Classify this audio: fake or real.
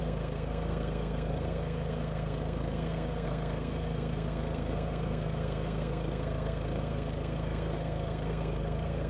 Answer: fake